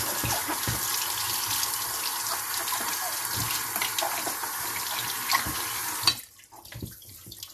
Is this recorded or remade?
recorded